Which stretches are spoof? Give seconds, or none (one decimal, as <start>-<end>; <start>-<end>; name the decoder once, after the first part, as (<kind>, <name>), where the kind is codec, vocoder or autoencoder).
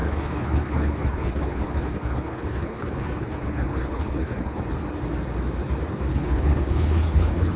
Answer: 0.0-4.6 (codec, HILCodec); 6.1-7.6